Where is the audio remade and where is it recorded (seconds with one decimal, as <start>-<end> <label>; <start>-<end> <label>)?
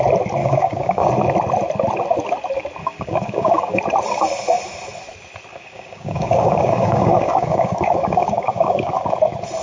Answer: 0.0-0.4 recorded; 0.4-1.1 remade; 1.1-2.8 recorded; 2.8-3.8 remade; 3.8-5.5 recorded; 5.5-9.1 remade; 9.1-9.6 recorded